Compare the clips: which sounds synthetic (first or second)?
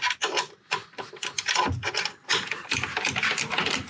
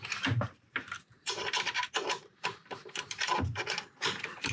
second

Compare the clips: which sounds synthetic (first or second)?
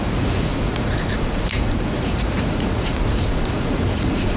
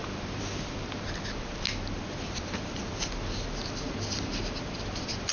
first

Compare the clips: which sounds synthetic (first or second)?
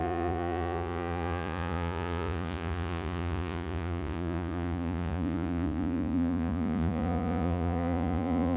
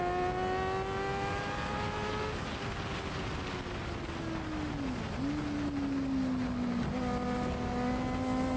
first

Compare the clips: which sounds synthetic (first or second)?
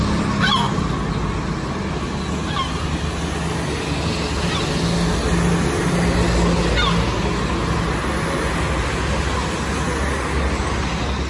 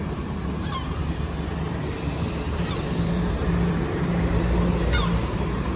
second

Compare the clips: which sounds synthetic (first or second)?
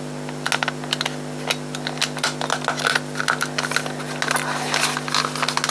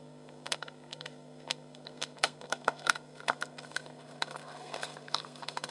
second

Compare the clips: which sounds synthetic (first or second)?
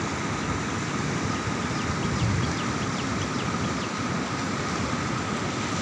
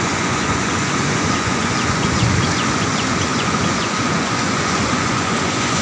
second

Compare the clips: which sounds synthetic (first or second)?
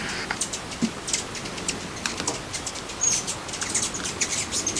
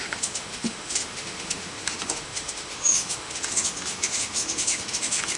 second